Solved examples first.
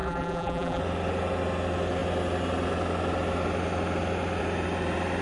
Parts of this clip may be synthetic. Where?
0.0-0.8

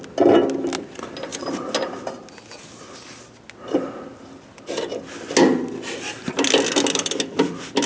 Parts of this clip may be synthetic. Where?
none

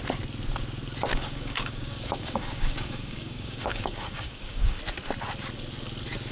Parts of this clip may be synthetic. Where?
1.1-4.8

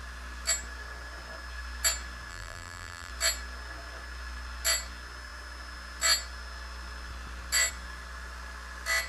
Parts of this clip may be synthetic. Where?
2.3-3.1

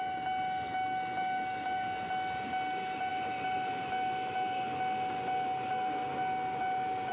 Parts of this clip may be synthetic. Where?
none

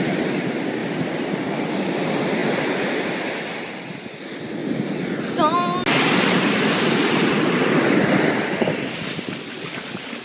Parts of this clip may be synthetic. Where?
0.8-1.4

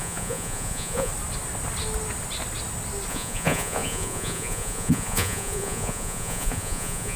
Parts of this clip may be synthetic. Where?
0.0-1.1; 3.1-7.2

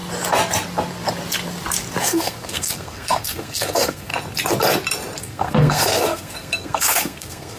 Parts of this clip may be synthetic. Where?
2.0-4.1; 5.2-7.6